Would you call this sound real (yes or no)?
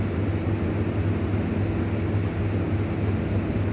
yes